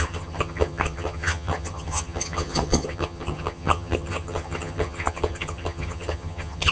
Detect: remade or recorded remade